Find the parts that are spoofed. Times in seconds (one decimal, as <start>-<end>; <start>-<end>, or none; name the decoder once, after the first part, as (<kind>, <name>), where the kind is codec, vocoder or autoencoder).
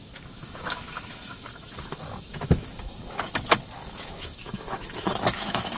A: 0.0-5.8 (autoencoder, DAC-VAE)